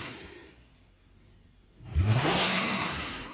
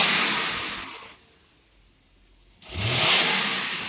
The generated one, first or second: first